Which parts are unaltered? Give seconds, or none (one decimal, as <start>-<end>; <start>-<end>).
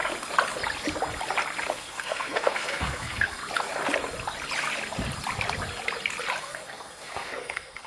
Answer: 0.0-1.7; 3.4-6.4